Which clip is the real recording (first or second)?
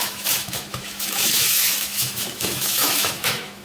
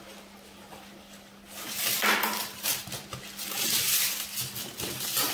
second